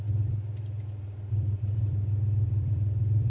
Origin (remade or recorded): remade